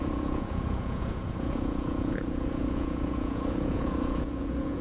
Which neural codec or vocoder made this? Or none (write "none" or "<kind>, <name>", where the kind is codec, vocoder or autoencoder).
vocoder, Vocos